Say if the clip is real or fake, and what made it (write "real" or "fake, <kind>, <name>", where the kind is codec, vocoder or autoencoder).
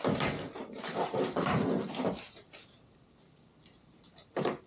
fake, vocoder, BigVGAN v2